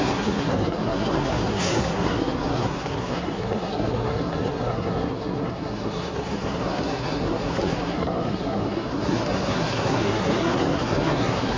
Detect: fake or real fake